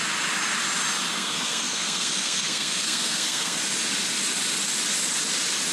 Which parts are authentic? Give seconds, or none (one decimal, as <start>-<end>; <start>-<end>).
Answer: 0.0-1.1; 3.6-5.7